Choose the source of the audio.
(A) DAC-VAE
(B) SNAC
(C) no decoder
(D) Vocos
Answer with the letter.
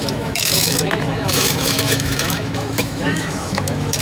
A